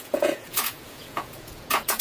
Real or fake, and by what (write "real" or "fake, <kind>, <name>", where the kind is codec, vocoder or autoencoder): fake, vocoder, Vocos